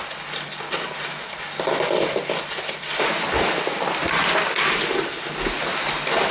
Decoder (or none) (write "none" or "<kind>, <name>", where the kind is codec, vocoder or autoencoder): none